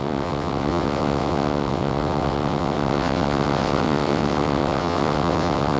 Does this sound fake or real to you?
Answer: fake